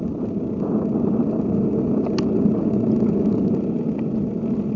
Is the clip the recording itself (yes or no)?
yes